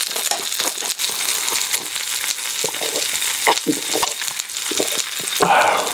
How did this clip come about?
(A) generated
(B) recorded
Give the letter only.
B